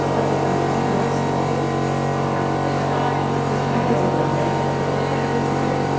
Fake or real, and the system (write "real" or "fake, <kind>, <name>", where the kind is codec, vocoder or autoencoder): real